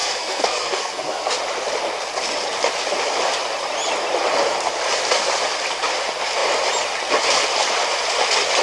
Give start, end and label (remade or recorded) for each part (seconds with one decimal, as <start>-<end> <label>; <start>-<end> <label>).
0.0-1.3 remade; 1.3-8.6 recorded